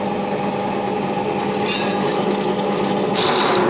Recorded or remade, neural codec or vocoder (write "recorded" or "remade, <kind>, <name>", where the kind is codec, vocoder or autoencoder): recorded